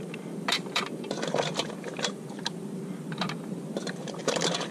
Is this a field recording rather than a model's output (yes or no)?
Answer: no